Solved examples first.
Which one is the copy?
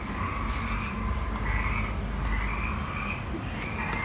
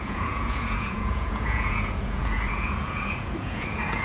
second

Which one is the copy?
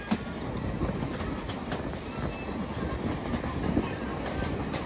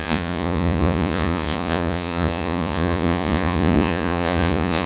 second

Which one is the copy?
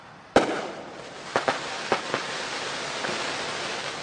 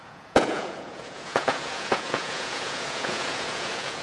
second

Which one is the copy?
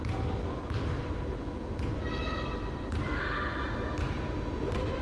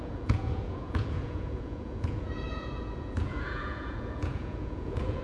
second